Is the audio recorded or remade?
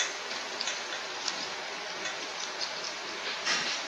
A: recorded